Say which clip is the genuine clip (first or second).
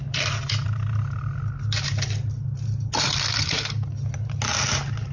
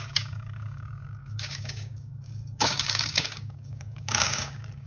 first